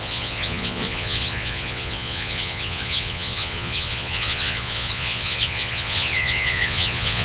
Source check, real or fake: fake